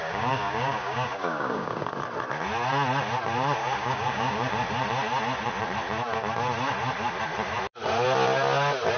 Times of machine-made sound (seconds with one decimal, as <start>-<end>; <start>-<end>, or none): 0.0-1.9; 3.6-4.5